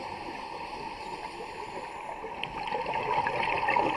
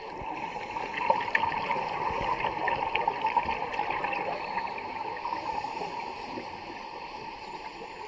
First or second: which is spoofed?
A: second